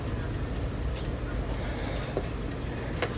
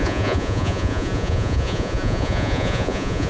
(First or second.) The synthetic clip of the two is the second